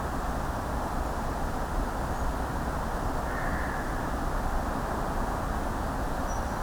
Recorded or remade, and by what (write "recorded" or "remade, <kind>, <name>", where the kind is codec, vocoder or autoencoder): recorded